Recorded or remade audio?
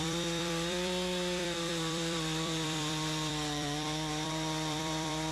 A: remade